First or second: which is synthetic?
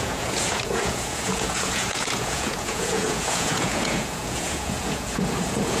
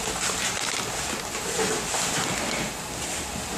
first